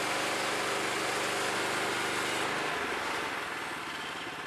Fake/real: real